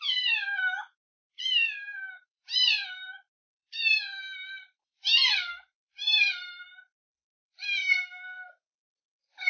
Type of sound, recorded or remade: remade